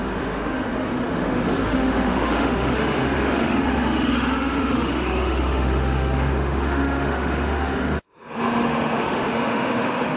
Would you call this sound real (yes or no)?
no